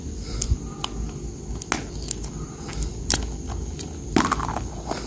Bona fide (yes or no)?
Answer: yes